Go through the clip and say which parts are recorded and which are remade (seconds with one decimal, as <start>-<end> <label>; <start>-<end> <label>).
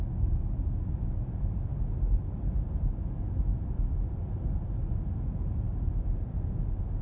0.0-7.0 recorded